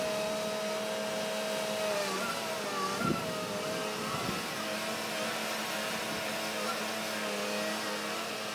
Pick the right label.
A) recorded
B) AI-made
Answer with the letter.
A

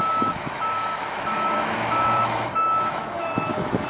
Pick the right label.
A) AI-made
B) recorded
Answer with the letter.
A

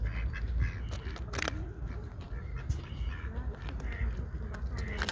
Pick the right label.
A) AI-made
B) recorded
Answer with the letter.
B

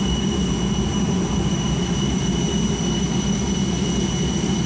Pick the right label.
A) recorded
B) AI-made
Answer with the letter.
A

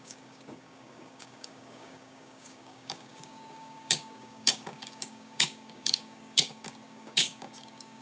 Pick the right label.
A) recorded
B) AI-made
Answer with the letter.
B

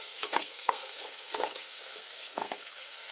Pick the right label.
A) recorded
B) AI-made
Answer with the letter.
B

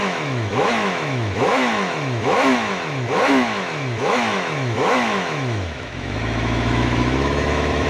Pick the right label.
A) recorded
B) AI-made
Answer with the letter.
B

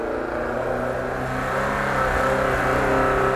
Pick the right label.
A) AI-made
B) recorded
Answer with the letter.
B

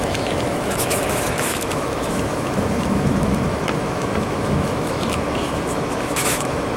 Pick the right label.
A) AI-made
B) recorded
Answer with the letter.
A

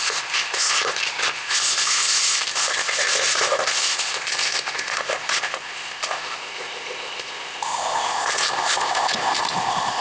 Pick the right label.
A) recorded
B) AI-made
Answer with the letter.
B